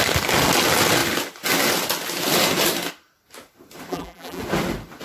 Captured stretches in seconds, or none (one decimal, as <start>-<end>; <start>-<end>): 0.0-3.9; 4.4-5.0